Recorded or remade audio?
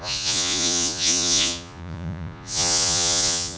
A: remade